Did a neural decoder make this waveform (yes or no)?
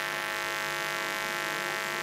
no